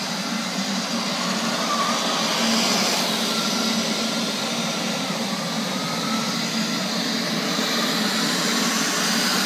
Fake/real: real